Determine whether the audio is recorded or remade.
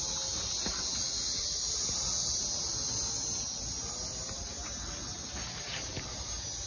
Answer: recorded